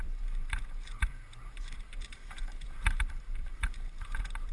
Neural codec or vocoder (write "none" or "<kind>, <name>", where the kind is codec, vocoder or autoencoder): vocoder, BigVGAN v2